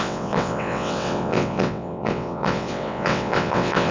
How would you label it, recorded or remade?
remade